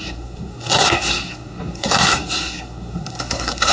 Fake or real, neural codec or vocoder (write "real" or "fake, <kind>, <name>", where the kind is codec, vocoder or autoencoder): fake, codec, SNAC